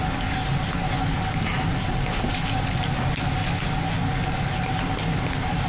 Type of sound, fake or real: real